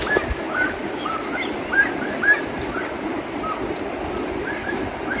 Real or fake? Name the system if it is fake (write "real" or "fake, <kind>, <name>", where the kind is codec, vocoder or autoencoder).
real